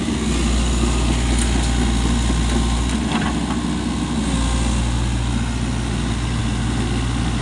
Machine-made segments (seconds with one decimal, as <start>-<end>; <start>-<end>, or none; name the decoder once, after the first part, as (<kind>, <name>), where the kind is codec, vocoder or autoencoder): none